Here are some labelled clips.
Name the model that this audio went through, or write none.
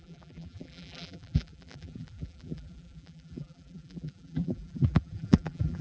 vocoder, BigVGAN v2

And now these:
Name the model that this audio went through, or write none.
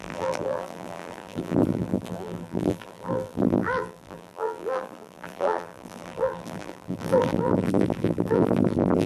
vocoder, BigVGAN v2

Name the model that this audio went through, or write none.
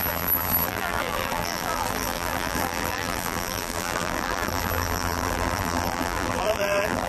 vocoder, BigVGAN v2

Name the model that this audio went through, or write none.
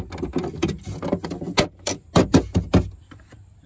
none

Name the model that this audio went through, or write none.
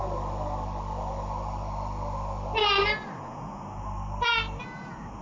none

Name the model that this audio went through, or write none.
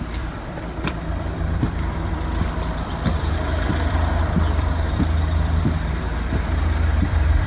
vocoder, BigVGAN v2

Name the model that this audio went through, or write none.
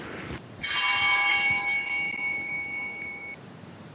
vocoder, BigVGAN v2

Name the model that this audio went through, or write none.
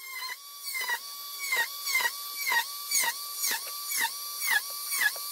none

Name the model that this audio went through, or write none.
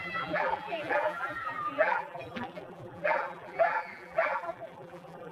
vocoder, BigVGAN v2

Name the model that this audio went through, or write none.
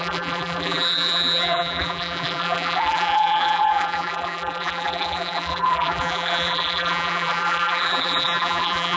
vocoder, BigVGAN v2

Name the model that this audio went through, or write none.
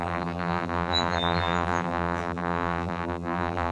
vocoder, BigVGAN v2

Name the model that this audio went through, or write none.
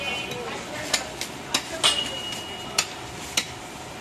none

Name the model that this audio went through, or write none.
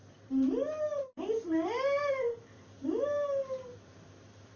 vocoder, BigVGAN v2